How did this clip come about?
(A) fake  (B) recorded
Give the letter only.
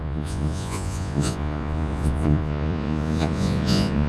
A